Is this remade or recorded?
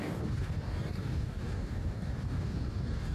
remade